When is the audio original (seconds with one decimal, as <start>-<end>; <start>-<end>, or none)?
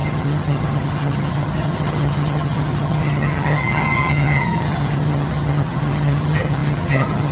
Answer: none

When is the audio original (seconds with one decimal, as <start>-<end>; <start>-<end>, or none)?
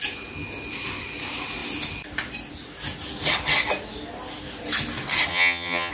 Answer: 0.0-5.3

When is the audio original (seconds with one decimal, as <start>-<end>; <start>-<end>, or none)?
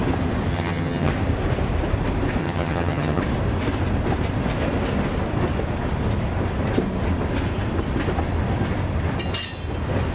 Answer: 0.0-0.5; 1.1-2.4; 3.2-10.1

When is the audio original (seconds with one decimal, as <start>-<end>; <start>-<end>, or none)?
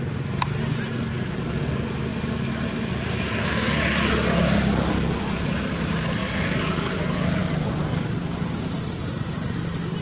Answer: 0.0-10.0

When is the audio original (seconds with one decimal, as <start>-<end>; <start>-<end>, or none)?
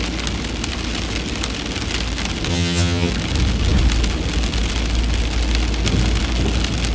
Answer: 0.0-2.5; 3.1-6.9